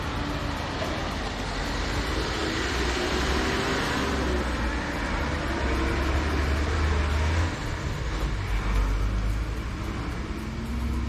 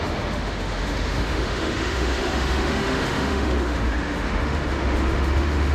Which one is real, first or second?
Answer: first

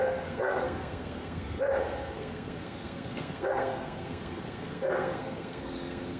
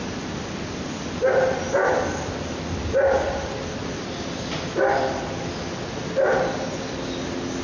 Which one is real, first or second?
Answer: second